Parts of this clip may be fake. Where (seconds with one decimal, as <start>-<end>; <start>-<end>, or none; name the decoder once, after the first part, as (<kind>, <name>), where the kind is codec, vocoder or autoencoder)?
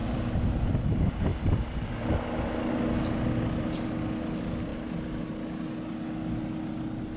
0.0-0.8 (vocoder, BigVGAN v2); 1.3-2.7